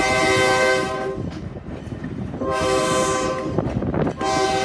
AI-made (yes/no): yes